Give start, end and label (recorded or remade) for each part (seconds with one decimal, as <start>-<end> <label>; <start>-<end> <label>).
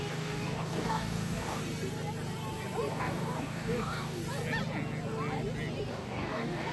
0.0-1.6 remade; 1.6-2.9 recorded; 2.9-4.2 remade; 4.2-5.9 recorded; 5.9-6.7 remade